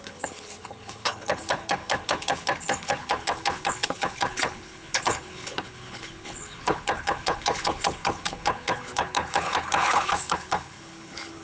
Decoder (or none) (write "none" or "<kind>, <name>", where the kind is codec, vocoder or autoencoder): codec, HILCodec